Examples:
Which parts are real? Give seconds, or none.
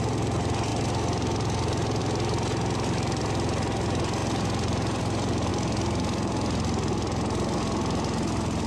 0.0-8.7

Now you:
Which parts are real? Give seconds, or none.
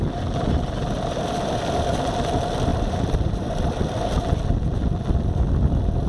0.0-2.7; 4.2-6.1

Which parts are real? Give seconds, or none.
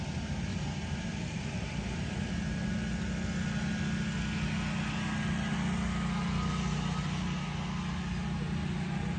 0.0-0.5; 2.7-9.2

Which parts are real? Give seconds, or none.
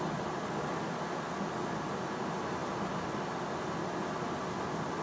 0.0-5.0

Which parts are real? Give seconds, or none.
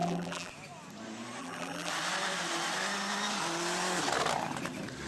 0.5-1.4; 1.9-5.1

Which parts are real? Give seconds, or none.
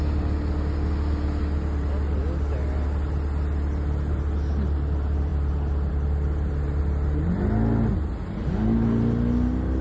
0.0-9.8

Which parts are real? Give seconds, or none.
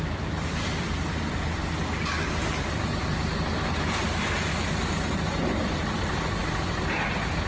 0.0-7.5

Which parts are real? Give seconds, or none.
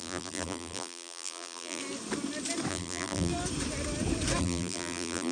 1.8-2.7; 3.3-4.4